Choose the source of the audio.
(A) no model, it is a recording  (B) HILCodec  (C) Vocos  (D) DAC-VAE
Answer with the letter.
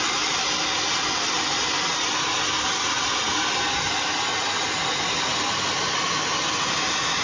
A